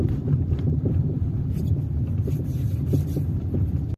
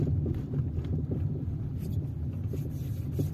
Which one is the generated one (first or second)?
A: first